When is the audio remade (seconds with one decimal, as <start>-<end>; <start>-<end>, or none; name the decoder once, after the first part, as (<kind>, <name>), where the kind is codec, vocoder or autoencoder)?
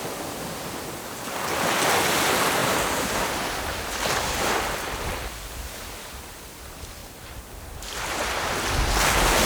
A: none